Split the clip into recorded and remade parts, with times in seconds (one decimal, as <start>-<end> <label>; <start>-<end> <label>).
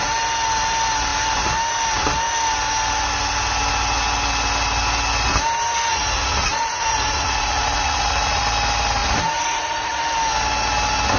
0.0-5.9 recorded; 5.9-8.4 remade; 8.4-9.0 recorded; 9.0-10.0 remade; 10.0-11.2 recorded